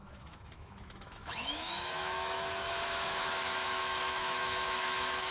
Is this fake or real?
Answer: fake